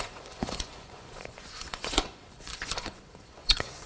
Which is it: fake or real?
fake